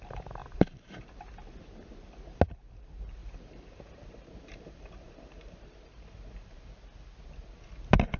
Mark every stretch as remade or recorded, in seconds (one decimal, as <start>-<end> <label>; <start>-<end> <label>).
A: 0.0-0.4 recorded; 0.4-1.1 remade; 1.1-3.2 recorded; 3.2-6.7 remade; 6.7-8.2 recorded